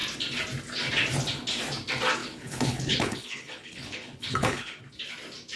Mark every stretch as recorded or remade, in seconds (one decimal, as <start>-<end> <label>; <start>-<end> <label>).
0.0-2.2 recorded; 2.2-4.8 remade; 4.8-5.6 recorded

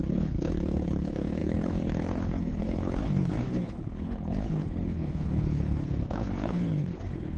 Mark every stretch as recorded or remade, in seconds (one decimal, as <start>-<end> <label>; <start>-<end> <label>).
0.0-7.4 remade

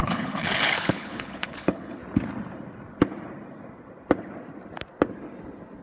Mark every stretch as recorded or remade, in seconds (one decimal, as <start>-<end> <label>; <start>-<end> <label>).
0.0-2.0 remade; 2.0-5.8 recorded